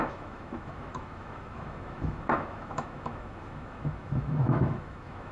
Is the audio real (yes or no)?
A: no